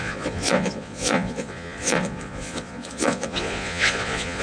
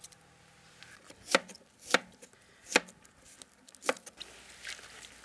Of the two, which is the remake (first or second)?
first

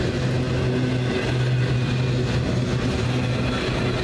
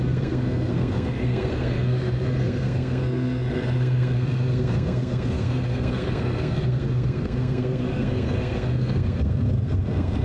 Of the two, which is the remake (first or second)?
second